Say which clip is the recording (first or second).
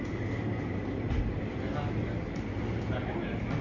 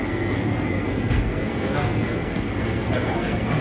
first